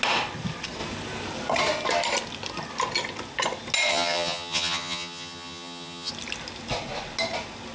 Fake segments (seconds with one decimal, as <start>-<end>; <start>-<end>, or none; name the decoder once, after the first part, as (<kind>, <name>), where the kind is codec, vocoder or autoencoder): 3.9-6.1 (vocoder, HiFi-GAN)